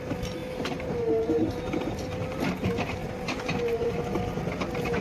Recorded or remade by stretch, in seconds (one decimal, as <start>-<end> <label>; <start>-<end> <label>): 0.0-0.4 recorded; 0.4-2.4 remade; 2.4-3.0 recorded; 3.0-4.0 remade; 4.0-5.0 recorded